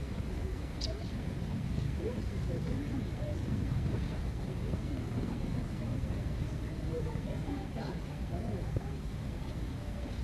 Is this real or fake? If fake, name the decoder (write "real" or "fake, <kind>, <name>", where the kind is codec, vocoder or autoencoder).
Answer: fake, codec, SNAC